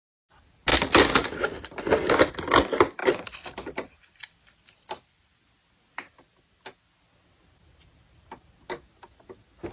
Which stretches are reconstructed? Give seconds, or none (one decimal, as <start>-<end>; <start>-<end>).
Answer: none